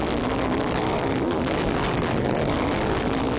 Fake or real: real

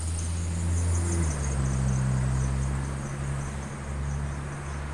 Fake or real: real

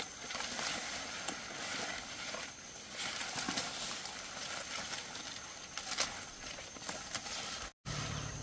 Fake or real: real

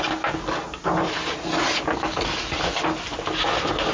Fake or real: real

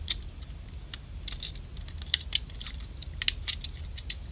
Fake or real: real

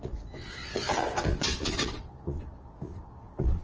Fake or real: fake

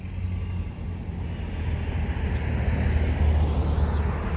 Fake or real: real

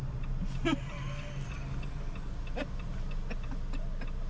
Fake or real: real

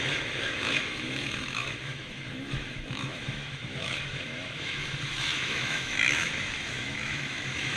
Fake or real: fake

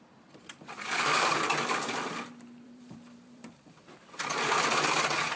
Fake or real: fake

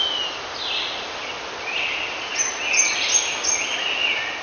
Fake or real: real